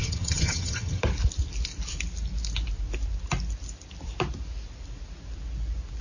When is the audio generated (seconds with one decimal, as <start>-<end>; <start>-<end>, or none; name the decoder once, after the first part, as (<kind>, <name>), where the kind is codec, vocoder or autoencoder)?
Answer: 0.0-1.0 (vocoder, HiFi-GAN)